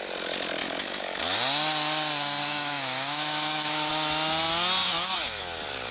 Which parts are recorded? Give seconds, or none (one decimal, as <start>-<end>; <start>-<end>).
0.0-0.6; 1.2-2.4; 3.9-4.8; 5.4-5.9